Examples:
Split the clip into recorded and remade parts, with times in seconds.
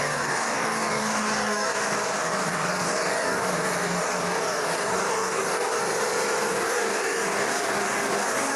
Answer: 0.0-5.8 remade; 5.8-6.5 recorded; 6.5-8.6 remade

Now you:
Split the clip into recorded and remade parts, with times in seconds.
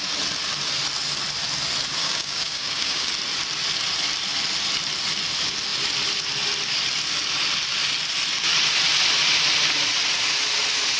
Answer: 0.0-2.0 recorded; 2.0-3.1 remade; 3.1-11.0 recorded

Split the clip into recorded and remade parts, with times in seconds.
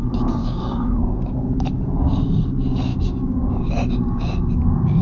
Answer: 0.0-0.4 recorded; 0.4-1.0 remade; 1.0-2.9 recorded; 2.9-3.6 remade; 3.6-5.0 recorded